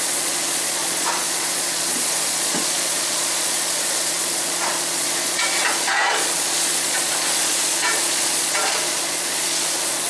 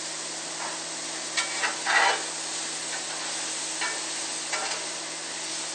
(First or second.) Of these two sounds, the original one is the second